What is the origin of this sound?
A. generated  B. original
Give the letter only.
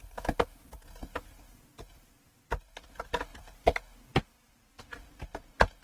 B